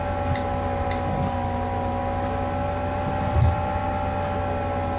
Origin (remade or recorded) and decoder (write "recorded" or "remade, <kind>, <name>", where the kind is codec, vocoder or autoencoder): recorded